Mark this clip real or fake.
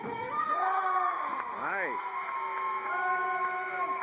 fake